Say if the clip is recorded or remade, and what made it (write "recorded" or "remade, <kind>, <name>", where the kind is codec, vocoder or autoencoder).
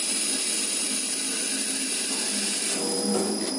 recorded